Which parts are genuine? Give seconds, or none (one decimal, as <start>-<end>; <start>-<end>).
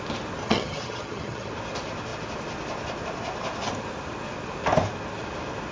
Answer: 0.0-0.4; 1.5-5.7